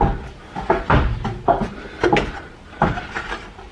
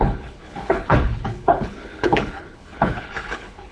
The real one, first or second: first